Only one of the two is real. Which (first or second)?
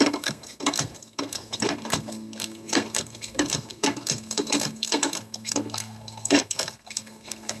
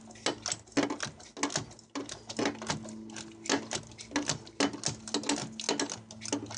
second